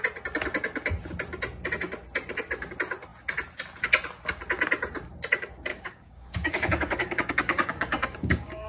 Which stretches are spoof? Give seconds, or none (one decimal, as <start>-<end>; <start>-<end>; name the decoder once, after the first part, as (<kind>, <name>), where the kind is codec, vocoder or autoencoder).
5.7-8.7 (codec, DAC)